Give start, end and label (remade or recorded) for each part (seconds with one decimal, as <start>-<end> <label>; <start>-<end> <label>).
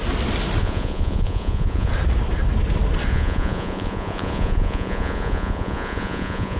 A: 0.0-0.6 recorded; 0.6-1.9 remade; 1.9-3.1 recorded; 3.1-6.6 remade